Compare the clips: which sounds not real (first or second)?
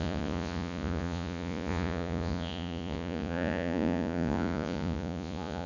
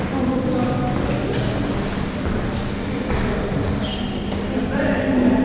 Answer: first